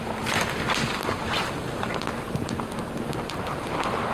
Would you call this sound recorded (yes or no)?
yes